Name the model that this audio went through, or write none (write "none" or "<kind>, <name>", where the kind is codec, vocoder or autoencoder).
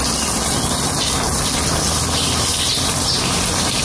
none